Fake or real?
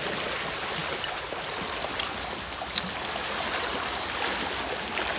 real